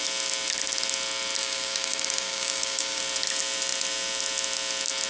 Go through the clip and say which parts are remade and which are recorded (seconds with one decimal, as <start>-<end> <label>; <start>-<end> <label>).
0.0-1.4 recorded; 1.4-3.0 remade; 3.0-5.1 recorded